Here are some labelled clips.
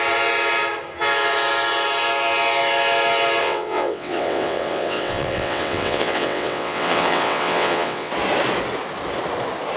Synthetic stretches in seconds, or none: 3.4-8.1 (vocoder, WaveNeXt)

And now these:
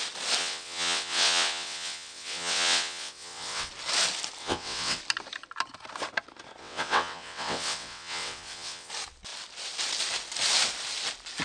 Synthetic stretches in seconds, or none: 0.4-3.7 (vocoder, WaveNeXt); 4.4-5.0; 6.6-8.9

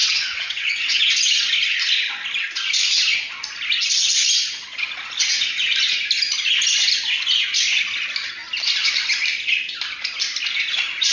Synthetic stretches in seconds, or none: 0.0-1.1 (vocoder, WaveNeXt)

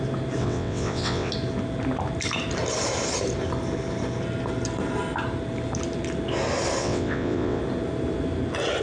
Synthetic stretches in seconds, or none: 0.4-1.3 (vocoder, WaveNeXt); 6.8-7.6

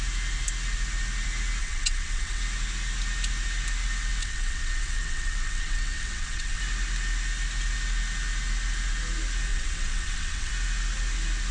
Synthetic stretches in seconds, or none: 1.6-2.4 (vocoder, WaveNeXt); 4.2-6.6; 9.5-10.5

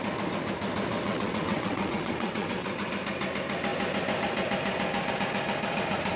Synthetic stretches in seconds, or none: 0.9-2.9 (vocoder, WaveNeXt)

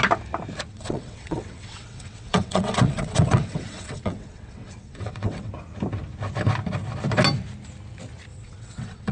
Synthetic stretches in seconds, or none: 0.7-5.5 (vocoder, WaveNeXt); 8.3-9.1